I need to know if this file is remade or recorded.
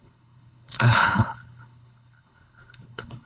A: remade